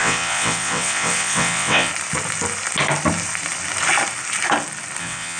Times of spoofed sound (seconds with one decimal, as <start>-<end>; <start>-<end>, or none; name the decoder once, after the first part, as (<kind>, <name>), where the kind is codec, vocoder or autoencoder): 0.0-1.9 (vocoder, WaveNeXt); 5.0-5.4